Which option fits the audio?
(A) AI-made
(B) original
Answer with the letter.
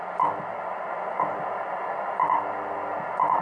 B